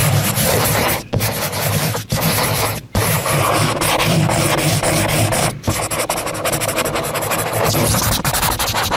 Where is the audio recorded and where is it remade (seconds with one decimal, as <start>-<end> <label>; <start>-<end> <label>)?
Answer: 0.0-3.8 remade; 3.8-9.0 recorded